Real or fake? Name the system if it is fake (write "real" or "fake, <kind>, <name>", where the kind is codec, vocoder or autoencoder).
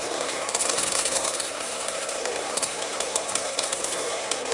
fake, codec, SNAC